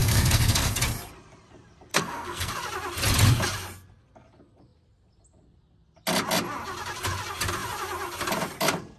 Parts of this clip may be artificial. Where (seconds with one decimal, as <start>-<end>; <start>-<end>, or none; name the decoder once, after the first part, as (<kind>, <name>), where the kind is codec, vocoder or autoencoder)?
0.0-0.8 (codec, SNAC); 1.9-2.5